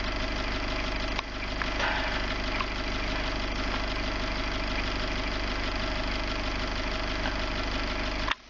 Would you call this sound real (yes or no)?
yes